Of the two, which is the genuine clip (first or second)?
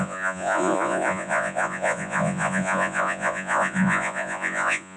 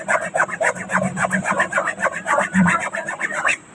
second